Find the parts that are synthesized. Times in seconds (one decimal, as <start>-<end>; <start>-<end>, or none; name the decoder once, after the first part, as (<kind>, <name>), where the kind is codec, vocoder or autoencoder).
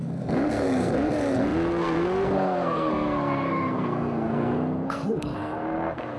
0.0-6.2 (codec, SNAC)